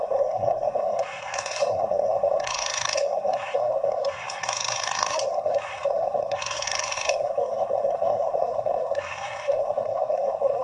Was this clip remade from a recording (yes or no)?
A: yes